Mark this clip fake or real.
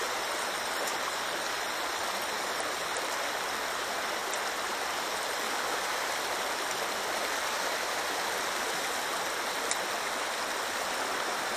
real